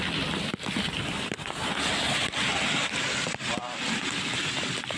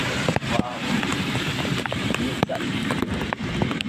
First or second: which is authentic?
first